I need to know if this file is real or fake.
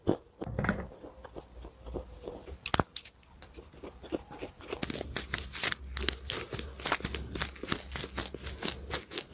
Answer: real